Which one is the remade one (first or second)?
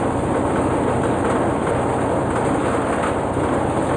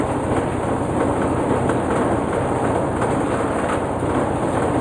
second